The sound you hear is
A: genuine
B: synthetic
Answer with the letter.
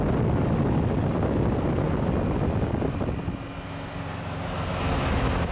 A